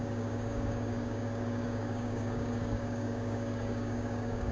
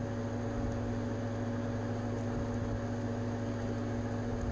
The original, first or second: second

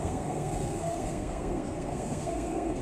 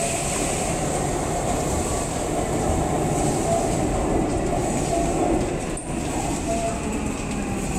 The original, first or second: second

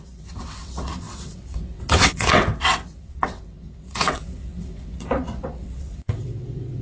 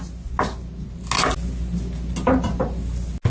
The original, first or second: second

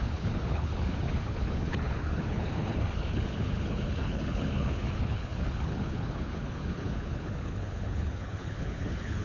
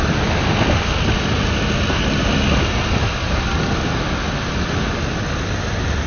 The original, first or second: second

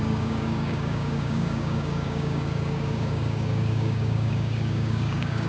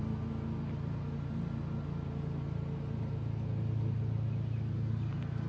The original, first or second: second